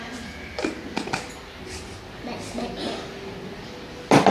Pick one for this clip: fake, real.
real